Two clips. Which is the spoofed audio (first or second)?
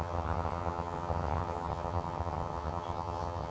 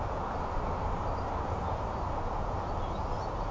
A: first